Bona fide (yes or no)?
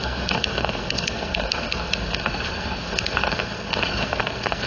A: no